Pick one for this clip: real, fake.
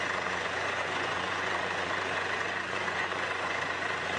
fake